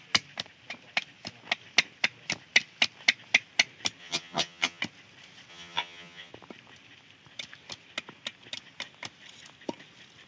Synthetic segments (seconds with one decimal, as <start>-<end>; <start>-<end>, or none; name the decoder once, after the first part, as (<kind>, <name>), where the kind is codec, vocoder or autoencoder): 4.0-4.8 (vocoder, HiFi-GAN); 5.5-6.3